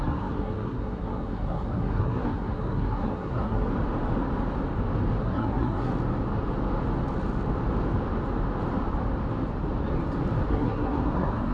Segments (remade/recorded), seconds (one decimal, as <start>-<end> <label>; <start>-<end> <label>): 0.0-3.7 remade; 3.7-5.2 recorded; 5.2-5.9 remade; 5.9-10.5 recorded; 10.5-11.5 remade